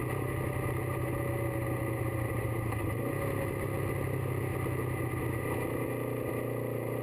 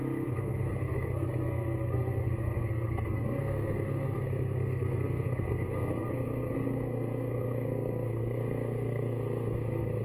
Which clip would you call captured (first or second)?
first